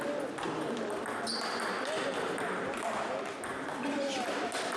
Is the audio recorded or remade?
recorded